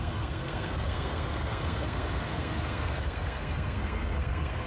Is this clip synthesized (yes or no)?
yes